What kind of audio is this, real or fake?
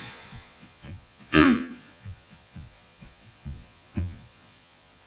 fake